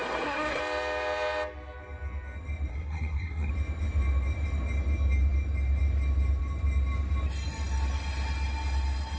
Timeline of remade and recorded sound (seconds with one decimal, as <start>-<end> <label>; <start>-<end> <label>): 0.0-0.6 remade; 0.6-2.7 recorded; 2.7-3.5 remade; 3.5-9.2 recorded